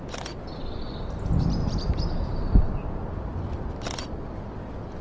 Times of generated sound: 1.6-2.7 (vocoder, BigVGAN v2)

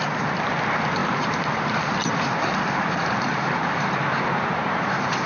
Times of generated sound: 1.0-1.6 (vocoder, BigVGAN v2); 2.0-5.3

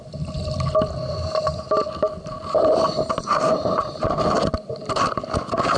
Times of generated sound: none